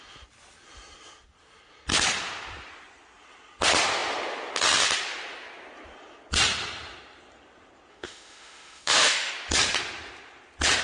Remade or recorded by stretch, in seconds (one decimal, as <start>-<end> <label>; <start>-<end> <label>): 0.0-7.9 recorded; 7.9-9.3 remade; 9.3-10.8 recorded